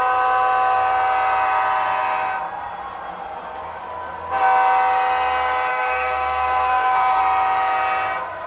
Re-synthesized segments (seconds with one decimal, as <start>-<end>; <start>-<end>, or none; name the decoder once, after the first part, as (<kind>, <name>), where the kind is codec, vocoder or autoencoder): 5.7-7.2 (codec, SNAC)